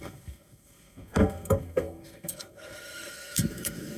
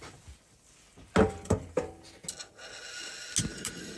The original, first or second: second